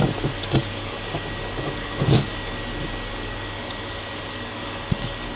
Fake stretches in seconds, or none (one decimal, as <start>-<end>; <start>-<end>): 0.4-2.6; 3.1-5.4